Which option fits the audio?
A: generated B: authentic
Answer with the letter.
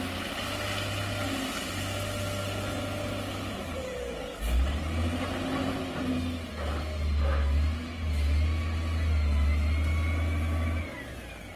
B